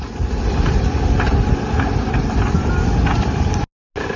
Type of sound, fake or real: real